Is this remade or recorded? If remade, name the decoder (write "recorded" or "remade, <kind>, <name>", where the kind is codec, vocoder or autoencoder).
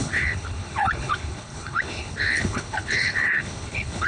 remade, codec, HILCodec